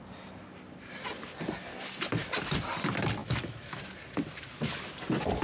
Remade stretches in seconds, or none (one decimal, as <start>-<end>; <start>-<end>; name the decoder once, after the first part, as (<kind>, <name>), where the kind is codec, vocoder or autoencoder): 3.2-3.8 (autoencoder, DAC-VAE)